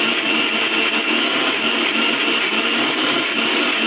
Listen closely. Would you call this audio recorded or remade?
recorded